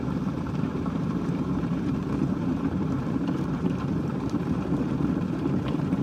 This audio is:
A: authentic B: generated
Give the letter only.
B